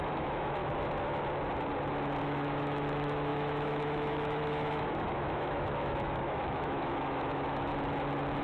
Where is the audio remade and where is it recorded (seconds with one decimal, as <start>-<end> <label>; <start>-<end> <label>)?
0.0-0.6 remade; 0.6-2.2 recorded; 2.2-7.7 remade; 7.7-8.4 recorded